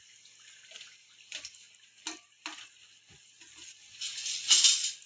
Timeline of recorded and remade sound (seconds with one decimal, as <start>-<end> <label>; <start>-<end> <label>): 0.0-5.1 recorded